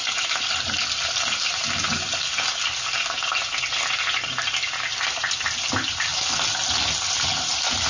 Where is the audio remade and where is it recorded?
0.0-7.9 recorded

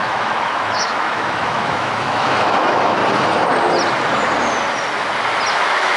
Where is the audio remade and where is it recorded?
0.0-3.0 remade; 3.0-5.5 recorded; 5.5-6.0 remade

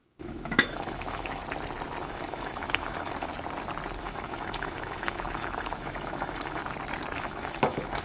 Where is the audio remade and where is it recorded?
0.0-1.4 remade; 1.4-2.0 recorded; 2.0-3.3 remade; 3.3-4.0 recorded; 4.0-6.6 remade; 6.6-7.2 recorded; 7.2-8.0 remade

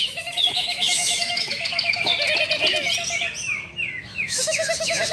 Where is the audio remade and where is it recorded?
0.0-2.1 remade; 2.1-4.0 recorded; 4.0-5.1 remade

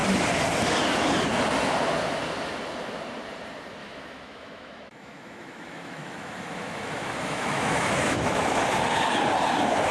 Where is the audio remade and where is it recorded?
0.0-3.8 recorded; 3.8-8.6 remade; 8.6-9.9 recorded

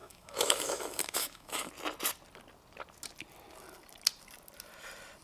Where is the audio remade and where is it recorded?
0.0-1.7 remade; 1.7-5.2 recorded

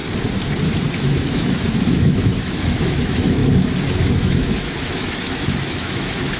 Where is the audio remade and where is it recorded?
0.0-0.9 recorded; 0.9-3.4 remade; 3.4-4.2 recorded; 4.2-6.4 remade

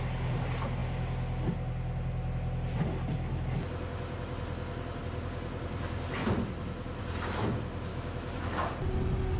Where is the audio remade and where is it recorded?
0.0-7.9 recorded; 7.9-8.7 remade; 8.7-9.4 recorded